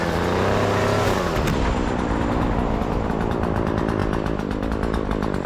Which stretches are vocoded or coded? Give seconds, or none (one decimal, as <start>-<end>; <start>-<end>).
none